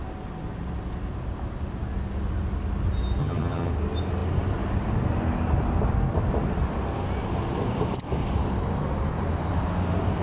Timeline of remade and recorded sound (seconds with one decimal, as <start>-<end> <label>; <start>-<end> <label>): 0.0-3.2 recorded; 3.2-3.7 remade; 3.7-10.2 recorded